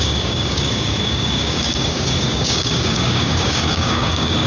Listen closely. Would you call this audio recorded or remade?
remade